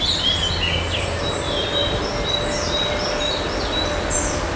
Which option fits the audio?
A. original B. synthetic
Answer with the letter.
A